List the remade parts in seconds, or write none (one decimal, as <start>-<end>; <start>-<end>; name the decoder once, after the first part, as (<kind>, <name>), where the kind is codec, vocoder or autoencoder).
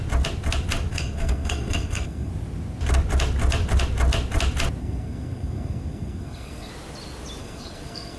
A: 0.9-2.3 (codec, SNAC); 4.8-6.7; 7.4-8.2